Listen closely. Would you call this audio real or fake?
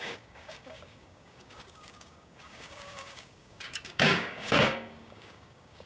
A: fake